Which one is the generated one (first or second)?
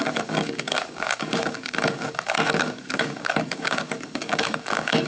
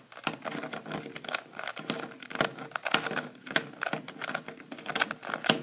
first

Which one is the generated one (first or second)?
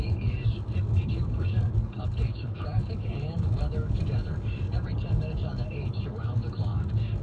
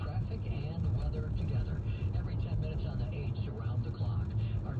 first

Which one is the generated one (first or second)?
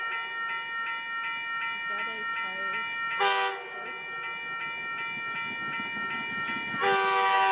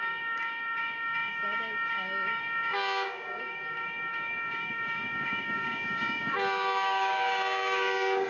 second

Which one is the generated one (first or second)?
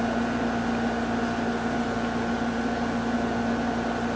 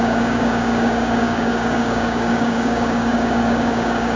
second